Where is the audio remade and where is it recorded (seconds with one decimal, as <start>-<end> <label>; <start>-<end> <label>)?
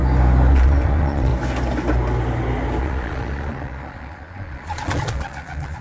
0.0-0.5 recorded; 0.5-1.3 remade; 1.3-2.8 recorded; 2.8-5.8 remade